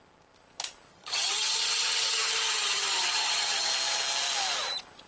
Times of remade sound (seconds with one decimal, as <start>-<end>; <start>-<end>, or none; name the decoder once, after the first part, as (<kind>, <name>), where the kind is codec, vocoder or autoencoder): 0.9-3.7 (vocoder, HiFi-GAN)